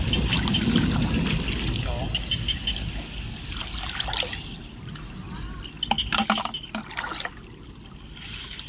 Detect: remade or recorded recorded